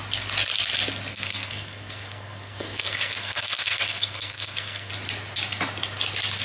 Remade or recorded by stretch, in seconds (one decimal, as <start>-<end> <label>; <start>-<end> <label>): 0.0-1.1 recorded; 1.1-4.9 remade; 4.9-6.4 recorded